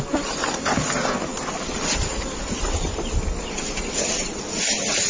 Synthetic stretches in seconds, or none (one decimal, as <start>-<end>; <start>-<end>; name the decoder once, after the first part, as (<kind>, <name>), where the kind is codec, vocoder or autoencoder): 1.3-4.4 (vocoder, BigVGAN v2)